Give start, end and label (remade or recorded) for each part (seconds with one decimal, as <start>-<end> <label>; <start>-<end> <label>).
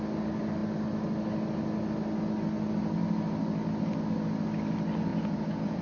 0.0-5.1 recorded; 5.1-5.8 remade